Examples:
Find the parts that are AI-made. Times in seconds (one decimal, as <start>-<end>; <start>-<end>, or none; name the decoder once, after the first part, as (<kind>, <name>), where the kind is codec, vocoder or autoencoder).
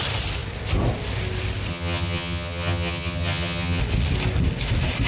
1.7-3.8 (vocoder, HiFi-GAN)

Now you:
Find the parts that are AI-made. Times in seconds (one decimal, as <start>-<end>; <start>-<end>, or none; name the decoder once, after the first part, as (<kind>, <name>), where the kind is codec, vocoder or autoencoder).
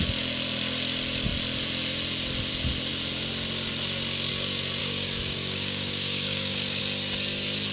4.8-6.8 (codec, DAC)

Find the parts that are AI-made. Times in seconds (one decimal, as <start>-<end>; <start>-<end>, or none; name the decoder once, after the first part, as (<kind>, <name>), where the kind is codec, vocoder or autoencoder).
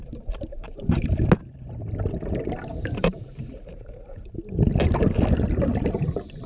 0.0-1.1 (vocoder, BigVGAN v2); 2.7-4.3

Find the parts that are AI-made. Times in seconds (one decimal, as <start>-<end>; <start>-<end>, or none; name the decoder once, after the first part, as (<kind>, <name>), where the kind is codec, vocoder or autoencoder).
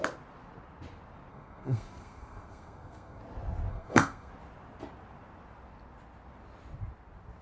1.3-3.2 (codec, SNAC); 3.7-4.3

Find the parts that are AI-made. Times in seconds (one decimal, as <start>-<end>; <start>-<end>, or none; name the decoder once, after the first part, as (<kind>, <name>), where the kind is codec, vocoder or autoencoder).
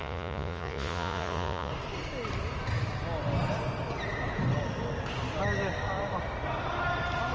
0.0-1.7 (vocoder, Vocos)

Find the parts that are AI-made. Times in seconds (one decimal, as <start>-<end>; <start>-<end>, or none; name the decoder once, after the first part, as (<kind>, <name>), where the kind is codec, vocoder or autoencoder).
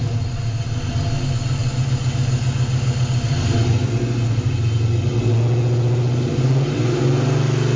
none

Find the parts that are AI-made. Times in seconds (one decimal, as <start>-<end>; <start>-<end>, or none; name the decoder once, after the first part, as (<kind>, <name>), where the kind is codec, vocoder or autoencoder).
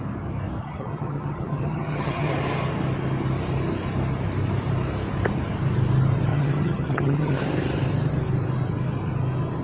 0.6-2.3 (vocoder, HiFi-GAN); 6.3-7.4